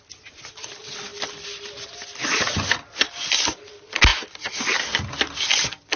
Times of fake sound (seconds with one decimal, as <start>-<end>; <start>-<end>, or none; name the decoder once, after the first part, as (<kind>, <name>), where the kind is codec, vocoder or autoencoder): 1.1-1.7 (vocoder, BigVGAN v2)